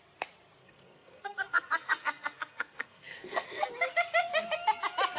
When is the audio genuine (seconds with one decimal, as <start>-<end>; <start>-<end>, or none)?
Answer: 0.0-0.6; 3.7-5.2